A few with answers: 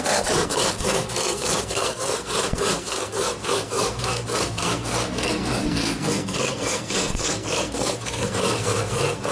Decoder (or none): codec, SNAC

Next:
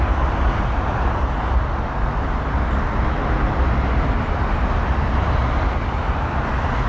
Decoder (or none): none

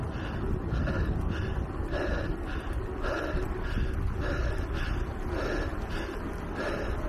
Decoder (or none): none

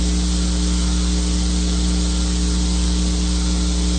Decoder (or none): none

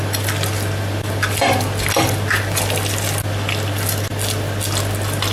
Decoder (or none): none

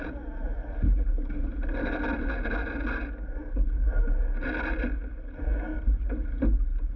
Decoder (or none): none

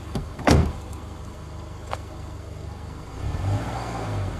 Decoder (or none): codec, SNAC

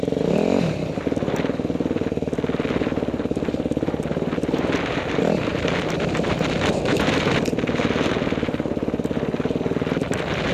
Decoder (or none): none